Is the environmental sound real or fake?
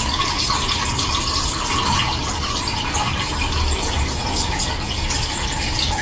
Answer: real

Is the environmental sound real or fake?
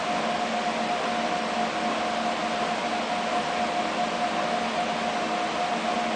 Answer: real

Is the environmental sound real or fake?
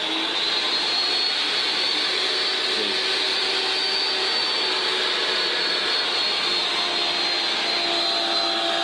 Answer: real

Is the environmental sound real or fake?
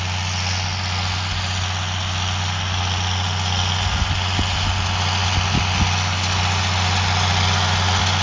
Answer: real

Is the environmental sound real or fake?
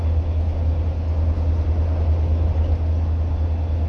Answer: real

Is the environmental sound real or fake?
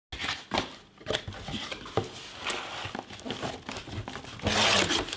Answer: real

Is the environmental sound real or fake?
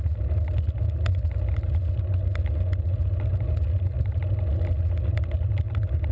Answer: real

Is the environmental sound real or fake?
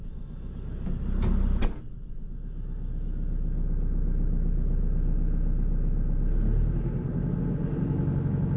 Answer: real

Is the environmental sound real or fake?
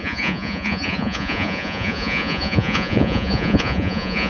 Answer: fake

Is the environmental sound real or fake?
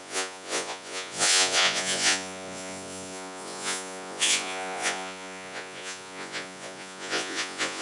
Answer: fake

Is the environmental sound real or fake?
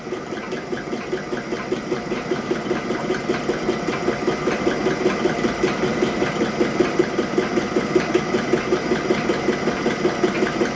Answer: real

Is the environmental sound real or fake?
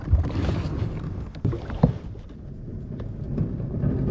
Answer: real